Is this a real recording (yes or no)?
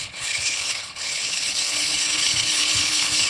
no